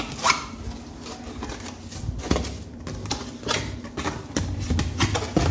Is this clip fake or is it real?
real